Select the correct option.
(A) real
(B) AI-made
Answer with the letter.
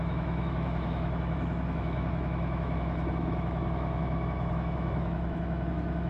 B